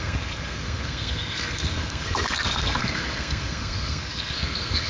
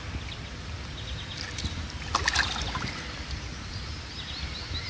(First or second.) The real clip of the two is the second